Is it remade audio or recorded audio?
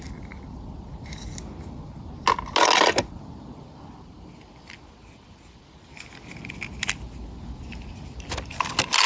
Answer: recorded